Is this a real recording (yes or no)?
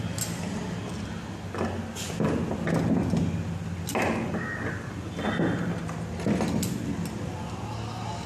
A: yes